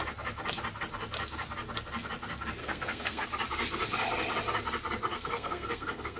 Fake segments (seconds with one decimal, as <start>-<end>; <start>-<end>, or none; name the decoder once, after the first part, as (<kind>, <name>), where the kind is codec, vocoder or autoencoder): 2.6-3.2 (codec, SNAC); 5.1-6.2